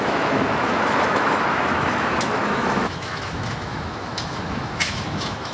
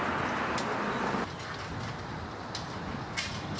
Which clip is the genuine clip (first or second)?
second